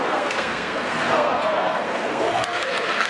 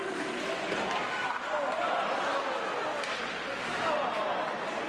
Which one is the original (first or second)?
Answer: second